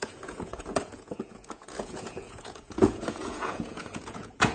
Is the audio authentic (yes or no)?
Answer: no